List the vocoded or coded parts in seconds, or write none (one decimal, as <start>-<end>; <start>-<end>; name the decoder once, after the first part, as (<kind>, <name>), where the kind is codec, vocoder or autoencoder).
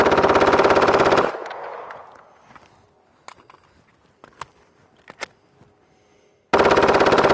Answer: 1.4-2.4 (vocoder, Vocos)